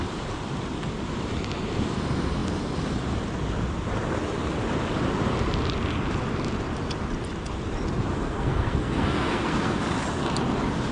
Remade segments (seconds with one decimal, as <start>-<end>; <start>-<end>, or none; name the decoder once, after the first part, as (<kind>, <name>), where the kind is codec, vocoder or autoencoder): 8.1-9.8 (codec, SNAC)